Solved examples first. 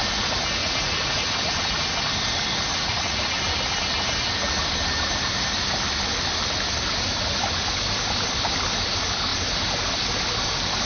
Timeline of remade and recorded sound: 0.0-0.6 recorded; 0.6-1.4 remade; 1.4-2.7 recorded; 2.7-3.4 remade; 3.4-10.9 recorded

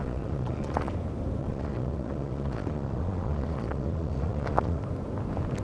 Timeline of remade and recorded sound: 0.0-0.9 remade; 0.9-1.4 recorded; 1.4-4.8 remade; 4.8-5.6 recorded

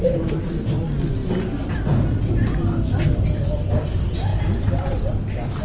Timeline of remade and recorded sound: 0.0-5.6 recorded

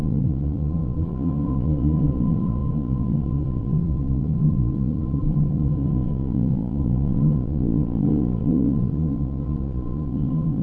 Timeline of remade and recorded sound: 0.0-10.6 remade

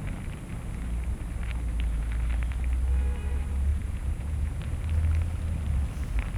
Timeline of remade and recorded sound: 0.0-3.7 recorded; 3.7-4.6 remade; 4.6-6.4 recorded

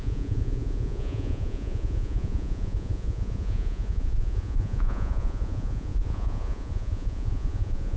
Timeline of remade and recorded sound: 0.0-8.0 remade

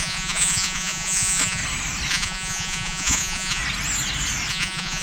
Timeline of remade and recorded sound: 0.0-1.6 remade; 1.6-2.1 recorded; 2.1-3.6 remade; 3.6-4.5 recorded; 4.5-5.0 remade

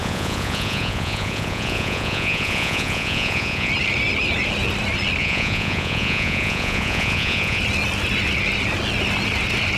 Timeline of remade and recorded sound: 0.0-3.7 remade; 3.7-5.2 recorded; 5.2-7.6 remade; 7.6-9.8 recorded